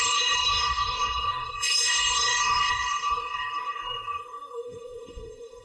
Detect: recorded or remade remade